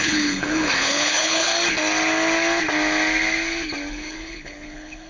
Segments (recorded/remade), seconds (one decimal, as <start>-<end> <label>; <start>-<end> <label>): 0.0-1.5 remade; 1.5-3.9 recorded; 3.9-5.1 remade